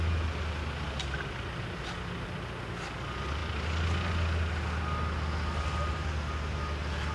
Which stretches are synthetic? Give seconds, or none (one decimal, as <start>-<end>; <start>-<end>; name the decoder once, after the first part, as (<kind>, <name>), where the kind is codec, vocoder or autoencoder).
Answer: none